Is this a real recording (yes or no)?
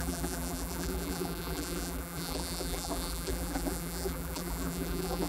no